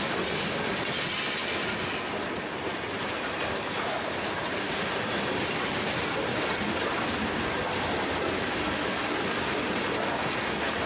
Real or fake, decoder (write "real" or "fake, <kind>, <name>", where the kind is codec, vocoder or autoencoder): real